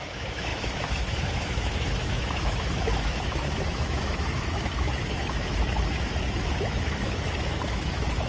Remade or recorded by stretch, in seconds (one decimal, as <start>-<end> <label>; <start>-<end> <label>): 0.0-8.3 remade